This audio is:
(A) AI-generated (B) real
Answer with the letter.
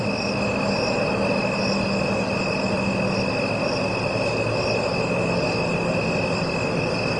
B